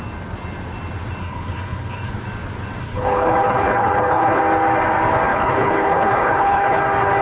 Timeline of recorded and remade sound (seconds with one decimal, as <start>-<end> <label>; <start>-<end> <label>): 0.0-1.2 recorded; 1.2-2.1 remade; 2.1-2.8 recorded; 2.8-4.4 remade; 4.4-5.3 recorded; 5.3-6.8 remade; 6.8-7.2 recorded